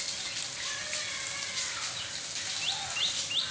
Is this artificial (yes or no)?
no